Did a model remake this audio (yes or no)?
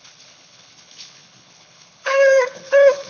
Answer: yes